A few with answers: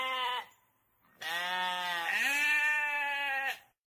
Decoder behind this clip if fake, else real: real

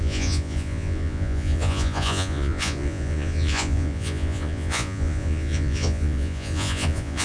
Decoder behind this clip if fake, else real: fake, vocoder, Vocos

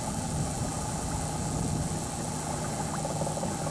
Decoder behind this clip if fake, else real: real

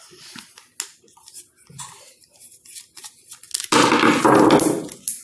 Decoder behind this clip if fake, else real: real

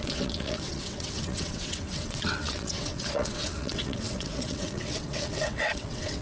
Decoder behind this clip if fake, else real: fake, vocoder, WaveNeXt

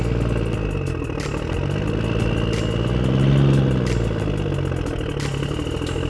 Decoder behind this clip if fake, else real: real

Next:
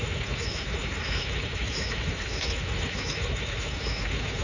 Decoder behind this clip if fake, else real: fake, autoencoder, DAC-VAE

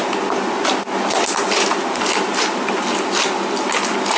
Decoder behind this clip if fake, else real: real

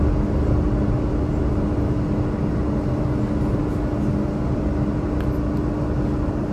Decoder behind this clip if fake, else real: real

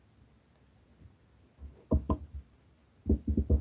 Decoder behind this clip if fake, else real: real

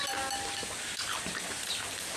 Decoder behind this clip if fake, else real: real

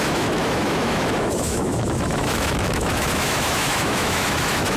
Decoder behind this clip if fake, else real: fake, autoencoder, DAC-VAE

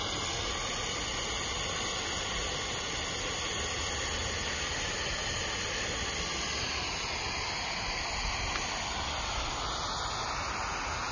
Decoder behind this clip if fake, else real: real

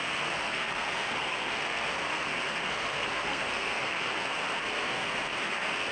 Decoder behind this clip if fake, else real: fake, codec, SNAC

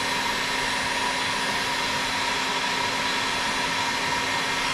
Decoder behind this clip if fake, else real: real